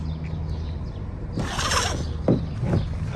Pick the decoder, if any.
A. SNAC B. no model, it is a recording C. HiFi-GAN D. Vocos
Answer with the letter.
B